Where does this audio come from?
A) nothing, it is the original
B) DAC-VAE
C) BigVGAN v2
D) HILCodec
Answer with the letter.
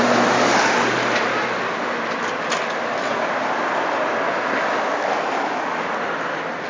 A